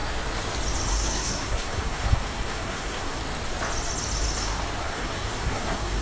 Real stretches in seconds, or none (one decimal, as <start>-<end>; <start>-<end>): 0.0-0.9; 3.2-4.8